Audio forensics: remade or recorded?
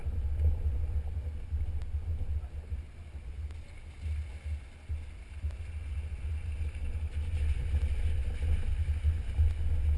recorded